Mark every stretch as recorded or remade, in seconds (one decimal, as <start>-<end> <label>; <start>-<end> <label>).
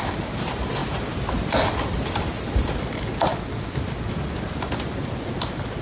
0.0-3.3 recorded; 3.3-4.1 remade; 4.1-5.8 recorded